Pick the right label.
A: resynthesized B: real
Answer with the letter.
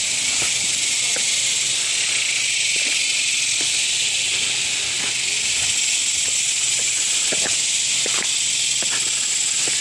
B